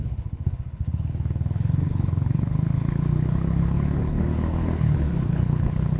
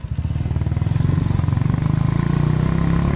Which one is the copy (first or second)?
first